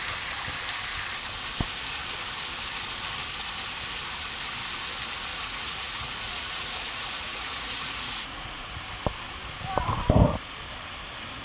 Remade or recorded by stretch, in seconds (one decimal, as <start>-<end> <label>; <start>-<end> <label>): 0.0-5.3 recorded; 5.3-8.8 remade; 8.8-11.4 recorded